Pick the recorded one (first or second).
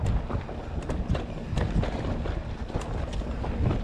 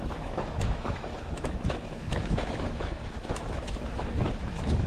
first